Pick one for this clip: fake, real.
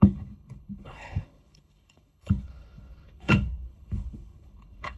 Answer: fake